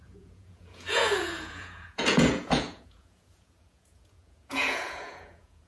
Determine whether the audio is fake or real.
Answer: fake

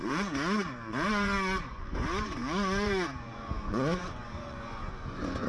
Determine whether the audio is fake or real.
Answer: fake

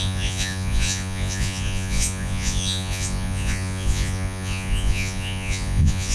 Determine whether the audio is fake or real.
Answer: fake